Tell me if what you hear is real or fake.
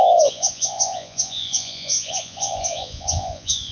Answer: fake